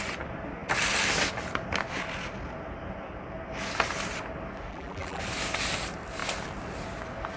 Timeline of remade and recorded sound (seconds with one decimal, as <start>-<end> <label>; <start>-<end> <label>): 0.0-4.7 recorded; 4.7-5.2 remade; 5.2-7.4 recorded